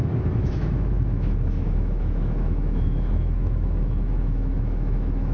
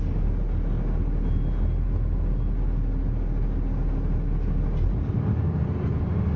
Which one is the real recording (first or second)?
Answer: second